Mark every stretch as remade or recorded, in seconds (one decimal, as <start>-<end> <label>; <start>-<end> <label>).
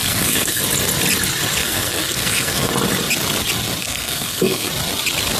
0.0-0.6 remade; 0.6-1.6 recorded; 1.6-2.7 remade; 2.7-3.8 recorded; 3.8-4.7 remade; 4.7-5.4 recorded